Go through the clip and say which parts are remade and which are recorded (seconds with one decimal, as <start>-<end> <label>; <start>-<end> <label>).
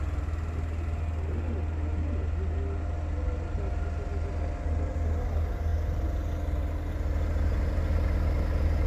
0.0-8.9 recorded